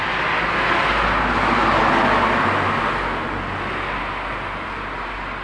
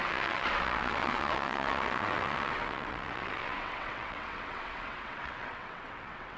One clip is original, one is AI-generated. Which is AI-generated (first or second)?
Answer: second